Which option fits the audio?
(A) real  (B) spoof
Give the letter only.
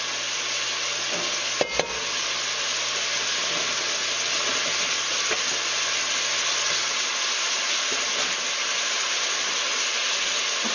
A